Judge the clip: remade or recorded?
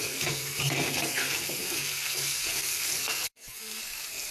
remade